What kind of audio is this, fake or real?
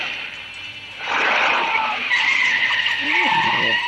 fake